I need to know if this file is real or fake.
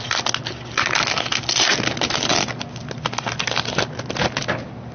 real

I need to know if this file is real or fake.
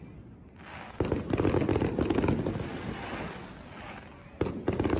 real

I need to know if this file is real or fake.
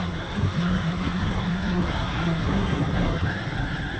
fake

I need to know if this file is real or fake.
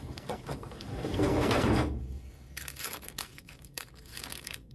fake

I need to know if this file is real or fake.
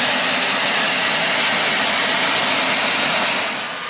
real